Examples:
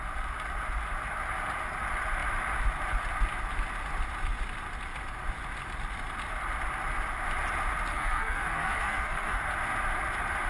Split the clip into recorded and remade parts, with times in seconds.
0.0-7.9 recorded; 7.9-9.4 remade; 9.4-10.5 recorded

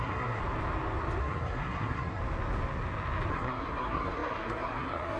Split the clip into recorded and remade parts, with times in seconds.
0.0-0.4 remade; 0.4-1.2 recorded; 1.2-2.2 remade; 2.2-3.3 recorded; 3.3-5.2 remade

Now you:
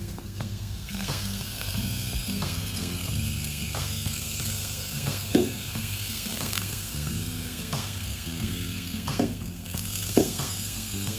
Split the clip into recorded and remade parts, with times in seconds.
0.0-11.2 remade

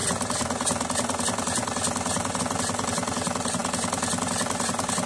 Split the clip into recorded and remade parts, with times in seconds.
0.0-5.1 recorded